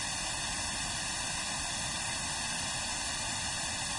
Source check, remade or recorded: recorded